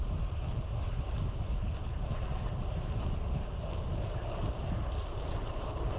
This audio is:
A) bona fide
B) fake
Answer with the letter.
A